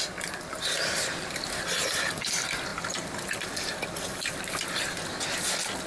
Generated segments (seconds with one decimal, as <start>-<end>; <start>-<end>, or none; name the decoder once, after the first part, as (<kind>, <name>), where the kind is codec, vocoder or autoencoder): none